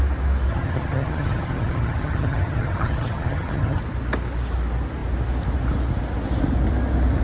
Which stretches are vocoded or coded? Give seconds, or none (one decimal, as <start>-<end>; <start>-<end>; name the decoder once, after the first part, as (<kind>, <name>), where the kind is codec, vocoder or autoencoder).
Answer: 0.5-3.8 (vocoder, HiFi-GAN)